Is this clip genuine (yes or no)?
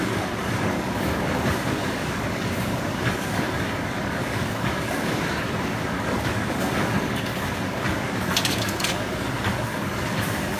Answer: no